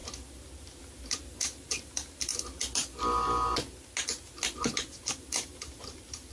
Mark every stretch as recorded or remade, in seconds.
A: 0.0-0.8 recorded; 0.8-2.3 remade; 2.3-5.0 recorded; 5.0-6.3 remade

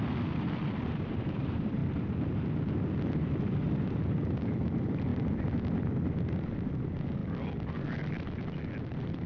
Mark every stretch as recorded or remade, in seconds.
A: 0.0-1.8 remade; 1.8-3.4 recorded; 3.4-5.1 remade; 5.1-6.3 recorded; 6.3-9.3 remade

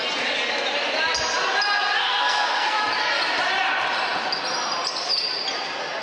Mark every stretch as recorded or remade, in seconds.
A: 0.0-2.0 recorded; 2.0-2.8 remade; 2.8-6.0 recorded